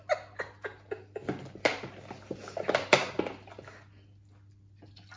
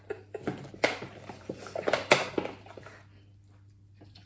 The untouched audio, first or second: first